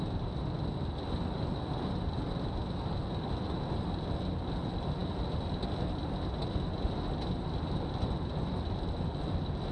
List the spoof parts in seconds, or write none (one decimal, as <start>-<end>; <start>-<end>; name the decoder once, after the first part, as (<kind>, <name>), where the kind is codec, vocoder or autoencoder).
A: none